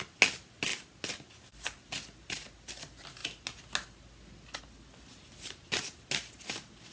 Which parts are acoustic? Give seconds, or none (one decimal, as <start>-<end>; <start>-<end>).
0.0-6.9